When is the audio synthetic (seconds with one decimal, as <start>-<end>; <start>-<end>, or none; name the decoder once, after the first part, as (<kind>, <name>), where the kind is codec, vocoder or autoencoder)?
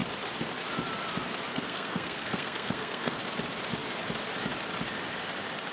1.5-3.2 (codec, SNAC)